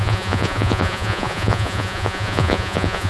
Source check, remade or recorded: remade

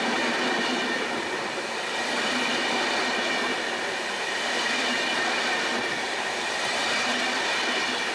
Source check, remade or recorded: recorded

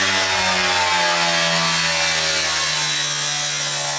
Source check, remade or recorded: recorded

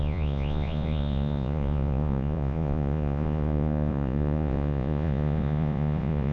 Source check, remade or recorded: remade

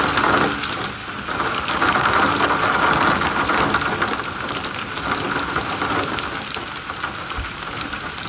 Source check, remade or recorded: recorded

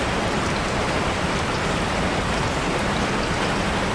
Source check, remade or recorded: recorded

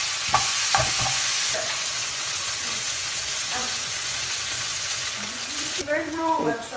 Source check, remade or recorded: remade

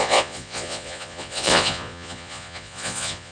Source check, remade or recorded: remade